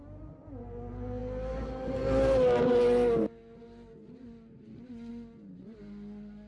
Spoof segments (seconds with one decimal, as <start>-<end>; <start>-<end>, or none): none